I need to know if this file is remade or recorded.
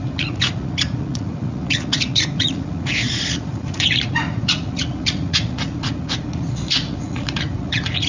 remade